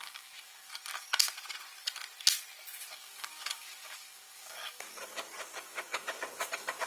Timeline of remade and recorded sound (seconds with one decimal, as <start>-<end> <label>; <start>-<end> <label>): 0.0-0.7 remade; 0.7-2.9 recorded; 2.9-6.9 remade